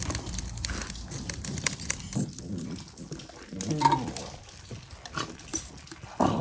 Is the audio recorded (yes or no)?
yes